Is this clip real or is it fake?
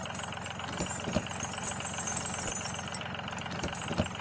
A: real